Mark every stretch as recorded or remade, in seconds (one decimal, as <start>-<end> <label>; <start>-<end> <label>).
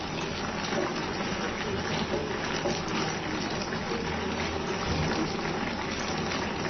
0.0-1.0 recorded; 1.0-1.5 remade; 1.5-6.7 recorded